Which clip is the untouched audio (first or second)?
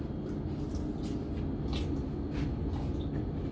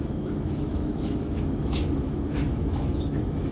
first